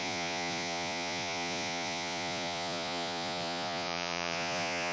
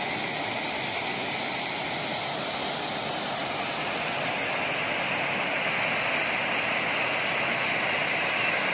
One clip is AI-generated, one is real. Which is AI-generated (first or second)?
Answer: first